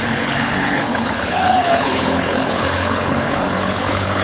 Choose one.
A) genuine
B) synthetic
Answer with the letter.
B